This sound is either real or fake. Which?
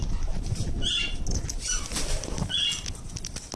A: real